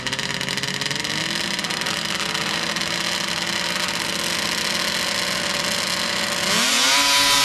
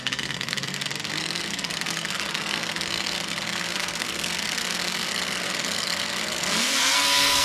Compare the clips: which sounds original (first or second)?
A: first